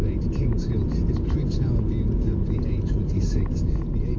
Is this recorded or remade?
recorded